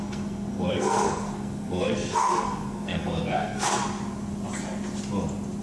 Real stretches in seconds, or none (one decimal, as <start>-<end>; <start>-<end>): 3.8-5.6